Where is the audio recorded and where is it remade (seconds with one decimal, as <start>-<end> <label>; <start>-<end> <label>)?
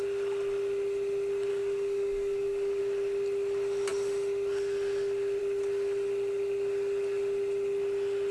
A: 0.0-1.5 recorded; 1.5-2.8 remade; 2.8-8.3 recorded